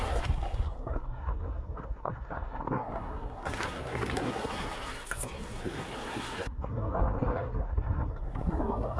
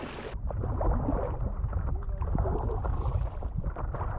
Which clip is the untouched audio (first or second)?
second